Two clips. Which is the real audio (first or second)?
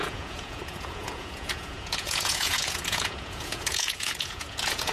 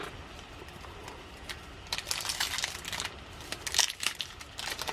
second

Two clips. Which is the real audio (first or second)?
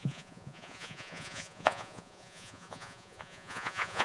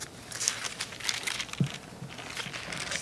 second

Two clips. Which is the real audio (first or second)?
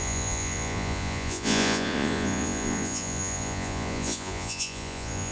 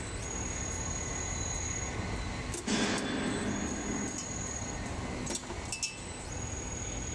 second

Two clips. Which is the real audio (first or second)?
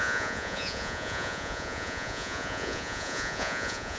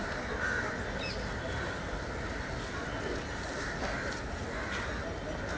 second